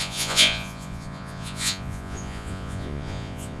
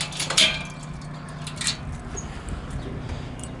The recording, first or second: second